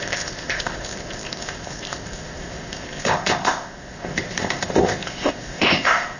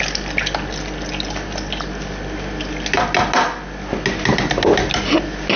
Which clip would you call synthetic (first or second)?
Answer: first